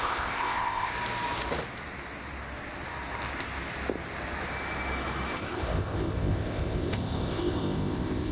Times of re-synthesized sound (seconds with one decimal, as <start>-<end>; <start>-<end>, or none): 0.0-0.9; 5.4-8.3